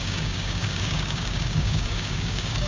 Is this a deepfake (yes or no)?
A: yes